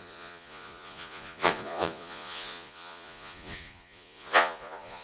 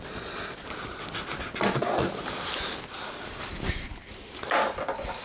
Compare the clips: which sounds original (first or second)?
second